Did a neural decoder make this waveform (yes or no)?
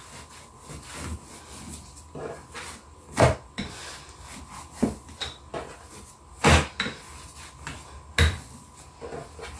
no